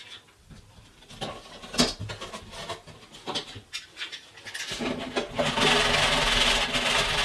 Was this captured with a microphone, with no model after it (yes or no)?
yes